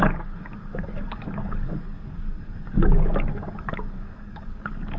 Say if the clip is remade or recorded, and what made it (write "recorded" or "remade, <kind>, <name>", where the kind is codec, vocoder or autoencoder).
remade, codec, DAC